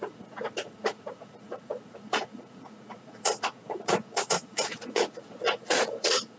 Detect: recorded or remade remade